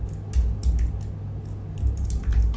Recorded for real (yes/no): yes